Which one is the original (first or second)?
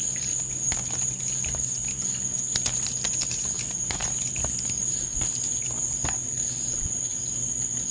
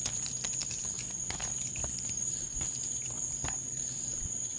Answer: first